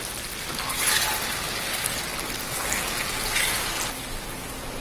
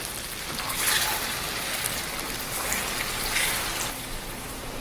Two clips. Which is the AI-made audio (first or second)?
second